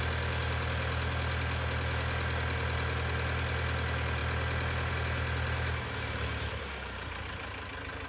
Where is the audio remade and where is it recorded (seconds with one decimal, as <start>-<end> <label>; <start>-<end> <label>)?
0.0-8.1 recorded